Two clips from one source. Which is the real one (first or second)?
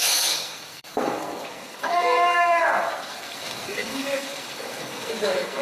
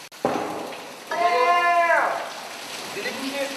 second